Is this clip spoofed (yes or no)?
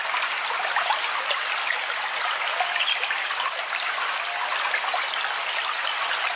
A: no